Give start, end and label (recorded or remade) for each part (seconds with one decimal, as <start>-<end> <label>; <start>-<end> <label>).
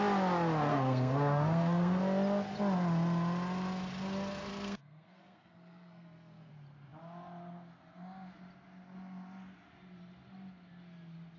0.0-0.7 recorded; 0.7-2.0 remade; 2.0-4.5 recorded; 4.5-6.5 remade; 6.5-11.4 recorded